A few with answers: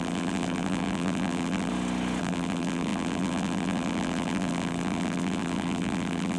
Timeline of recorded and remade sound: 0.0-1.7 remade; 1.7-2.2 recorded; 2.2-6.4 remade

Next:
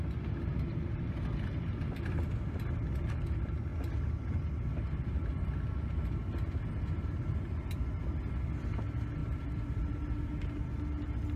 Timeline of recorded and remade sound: 0.0-9.2 recorded; 9.2-10.7 remade; 10.7-11.4 recorded